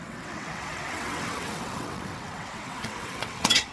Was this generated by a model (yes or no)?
yes